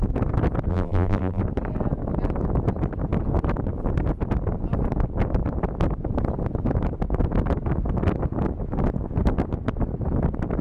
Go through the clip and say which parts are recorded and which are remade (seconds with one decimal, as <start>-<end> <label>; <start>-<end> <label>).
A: 0.0-0.7 recorded; 0.7-1.4 remade; 1.4-10.6 recorded